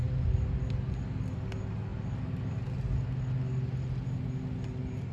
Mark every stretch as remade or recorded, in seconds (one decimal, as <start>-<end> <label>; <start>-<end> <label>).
0.0-0.7 remade; 0.7-5.1 recorded